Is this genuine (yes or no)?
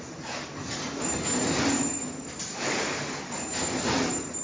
yes